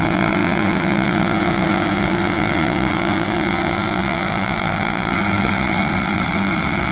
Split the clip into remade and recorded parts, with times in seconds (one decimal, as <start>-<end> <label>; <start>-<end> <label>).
0.0-6.9 remade